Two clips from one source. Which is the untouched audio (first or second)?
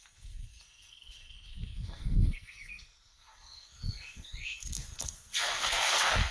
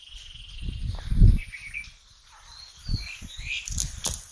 second